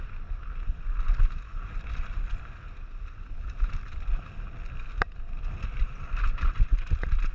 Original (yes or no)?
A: yes